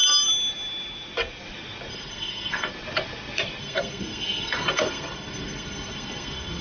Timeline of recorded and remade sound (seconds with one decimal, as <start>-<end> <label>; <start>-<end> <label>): 0.0-1.9 recorded; 1.9-2.7 remade; 2.7-3.6 recorded; 3.6-6.6 remade